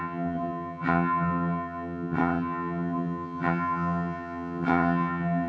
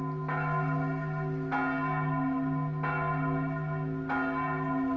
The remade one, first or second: first